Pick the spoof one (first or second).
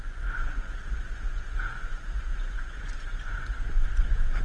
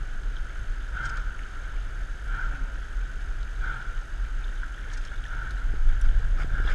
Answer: first